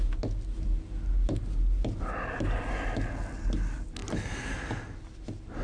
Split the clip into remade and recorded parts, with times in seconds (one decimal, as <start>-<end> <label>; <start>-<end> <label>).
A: 0.0-5.6 recorded